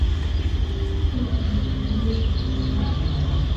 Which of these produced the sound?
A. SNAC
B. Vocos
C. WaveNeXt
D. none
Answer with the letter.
D